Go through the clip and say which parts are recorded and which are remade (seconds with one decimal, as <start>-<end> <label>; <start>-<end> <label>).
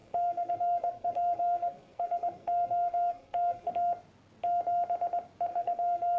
0.0-3.7 remade; 3.7-5.5 recorded; 5.5-6.2 remade